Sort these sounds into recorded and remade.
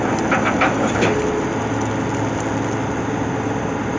recorded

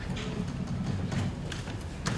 recorded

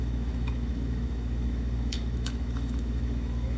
remade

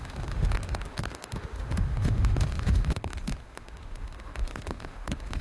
remade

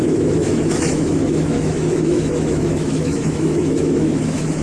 remade